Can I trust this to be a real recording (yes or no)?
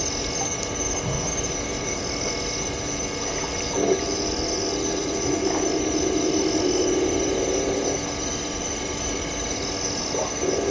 yes